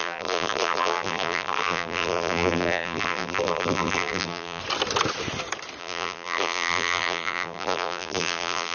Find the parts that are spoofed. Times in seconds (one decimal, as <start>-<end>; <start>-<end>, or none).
0.0-4.6; 5.8-8.7